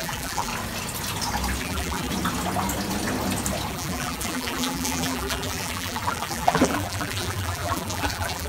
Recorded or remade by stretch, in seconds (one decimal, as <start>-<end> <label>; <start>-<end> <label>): 0.0-0.5 remade; 0.5-1.6 recorded; 1.6-2.1 remade; 2.1-3.7 recorded; 3.7-8.5 remade